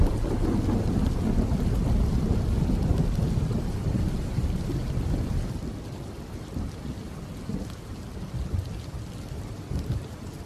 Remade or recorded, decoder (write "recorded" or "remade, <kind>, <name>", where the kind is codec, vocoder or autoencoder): recorded